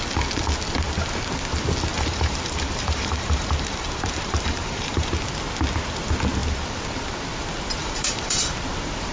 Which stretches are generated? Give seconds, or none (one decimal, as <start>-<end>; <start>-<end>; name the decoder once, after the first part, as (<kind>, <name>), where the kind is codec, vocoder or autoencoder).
1.9-5.1 (vocoder, BigVGAN v2); 7.8-8.5